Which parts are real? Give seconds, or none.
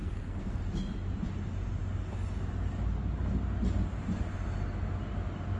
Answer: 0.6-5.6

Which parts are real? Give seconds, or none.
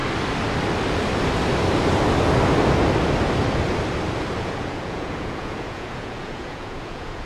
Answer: 0.0-4.4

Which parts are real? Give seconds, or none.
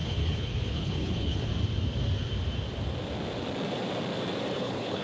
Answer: 1.5-4.5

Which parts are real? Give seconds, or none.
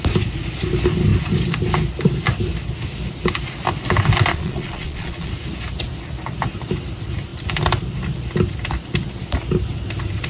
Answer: 0.0-4.3; 5.3-10.3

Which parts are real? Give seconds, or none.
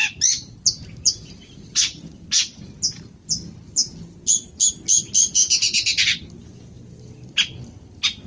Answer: 0.0-8.3